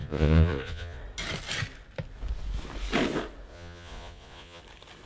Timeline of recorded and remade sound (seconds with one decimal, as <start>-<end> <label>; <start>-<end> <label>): 0.0-1.0 remade; 1.0-3.5 recorded; 3.5-4.6 remade; 4.6-5.1 recorded